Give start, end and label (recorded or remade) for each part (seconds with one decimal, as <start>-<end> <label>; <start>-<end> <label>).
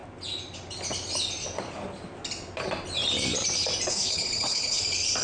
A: 0.0-3.9 recorded; 3.9-4.8 remade; 4.8-5.2 recorded